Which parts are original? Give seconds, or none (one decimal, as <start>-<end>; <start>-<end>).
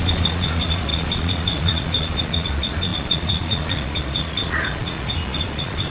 none